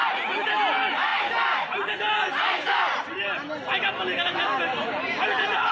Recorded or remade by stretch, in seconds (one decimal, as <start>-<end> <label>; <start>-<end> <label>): 0.0-5.7 recorded